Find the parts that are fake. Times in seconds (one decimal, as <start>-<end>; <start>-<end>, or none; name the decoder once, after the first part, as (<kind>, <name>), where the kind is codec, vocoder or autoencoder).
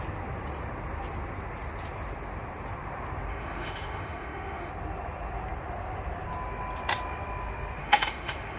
3.3-4.7 (autoencoder, DAC-VAE); 7.8-8.6